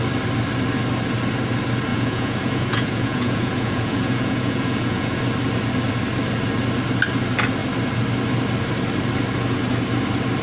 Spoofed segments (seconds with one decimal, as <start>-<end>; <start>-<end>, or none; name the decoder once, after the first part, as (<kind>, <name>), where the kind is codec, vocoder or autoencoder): 1.9-5.2 (vocoder, Vocos)